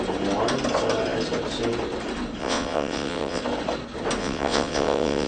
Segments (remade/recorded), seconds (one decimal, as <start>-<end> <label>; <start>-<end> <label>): 0.0-2.4 recorded; 2.4-3.4 remade; 3.4-4.2 recorded; 4.2-5.3 remade